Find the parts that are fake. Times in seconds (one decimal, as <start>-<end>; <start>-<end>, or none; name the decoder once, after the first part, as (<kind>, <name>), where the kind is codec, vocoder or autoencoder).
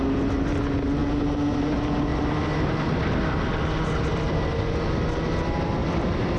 2.1-4.7 (vocoder, BigVGAN v2); 5.8-6.4